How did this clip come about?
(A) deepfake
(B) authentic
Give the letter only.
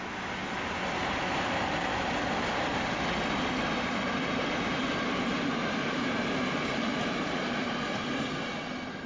B